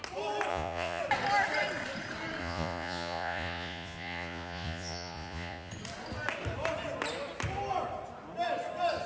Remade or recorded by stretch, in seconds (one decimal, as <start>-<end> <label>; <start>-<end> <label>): 0.0-0.5 recorded; 0.5-1.0 remade; 1.0-2.4 recorded; 2.4-5.7 remade; 5.7-9.1 recorded